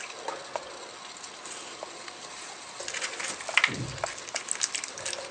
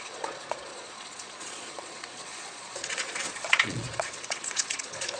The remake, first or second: second